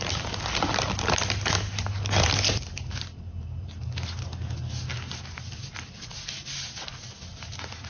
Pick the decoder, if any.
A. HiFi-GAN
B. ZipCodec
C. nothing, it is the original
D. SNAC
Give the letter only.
C